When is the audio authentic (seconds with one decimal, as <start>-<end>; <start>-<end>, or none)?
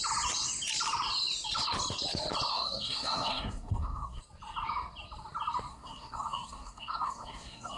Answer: 0.0-2.5; 4.2-5.7